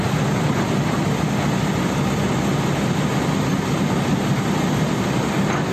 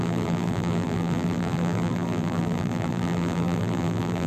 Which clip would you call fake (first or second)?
second